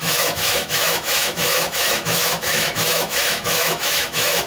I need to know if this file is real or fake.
fake